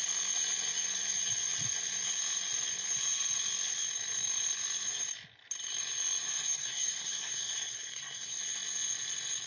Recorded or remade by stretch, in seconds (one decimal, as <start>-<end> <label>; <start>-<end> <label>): 0.0-6.2 recorded; 6.2-8.4 remade; 8.4-9.5 recorded